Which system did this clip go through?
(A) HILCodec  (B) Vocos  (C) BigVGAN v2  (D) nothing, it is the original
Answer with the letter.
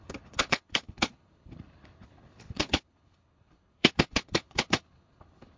A